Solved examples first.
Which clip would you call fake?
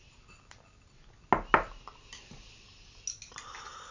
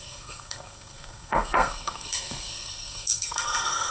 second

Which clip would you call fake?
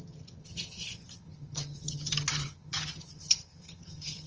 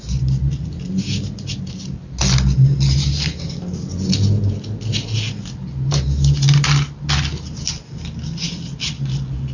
first